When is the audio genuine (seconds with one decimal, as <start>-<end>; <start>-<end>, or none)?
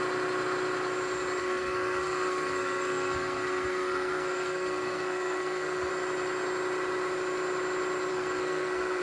0.0-1.4; 5.9-8.1